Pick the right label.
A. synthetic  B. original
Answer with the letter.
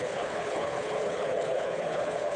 A